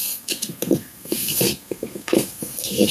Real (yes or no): no